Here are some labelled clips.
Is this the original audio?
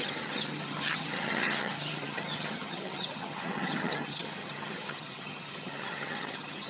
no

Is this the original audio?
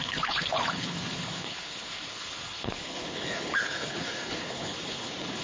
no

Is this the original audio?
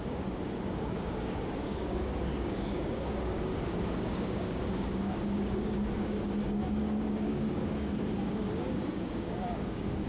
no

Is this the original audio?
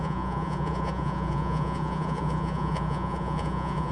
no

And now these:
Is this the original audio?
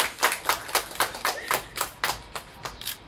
yes